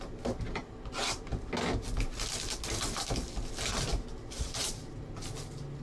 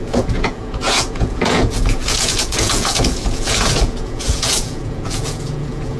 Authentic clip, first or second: first